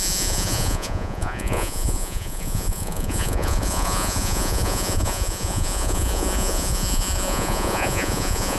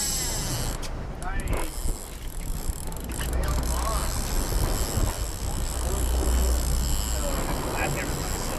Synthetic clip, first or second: first